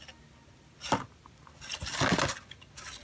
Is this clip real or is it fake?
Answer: real